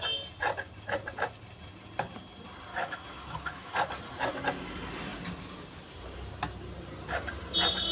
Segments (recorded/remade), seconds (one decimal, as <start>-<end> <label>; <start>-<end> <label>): 0.0-2.7 recorded; 2.7-3.7 remade; 3.7-7.9 recorded